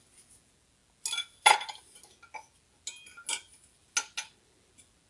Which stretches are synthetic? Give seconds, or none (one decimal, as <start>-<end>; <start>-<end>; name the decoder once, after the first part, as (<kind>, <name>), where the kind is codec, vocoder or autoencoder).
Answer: none